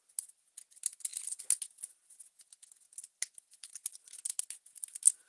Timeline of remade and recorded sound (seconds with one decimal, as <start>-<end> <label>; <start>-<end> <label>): 0.0-5.3 recorded